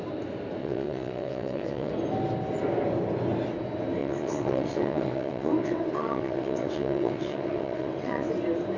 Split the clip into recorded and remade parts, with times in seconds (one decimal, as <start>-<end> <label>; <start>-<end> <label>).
0.0-0.6 recorded; 0.6-1.9 remade; 1.9-4.0 recorded; 4.0-8.3 remade; 8.3-8.8 recorded